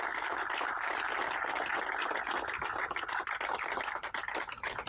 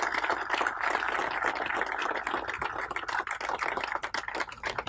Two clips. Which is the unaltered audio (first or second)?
second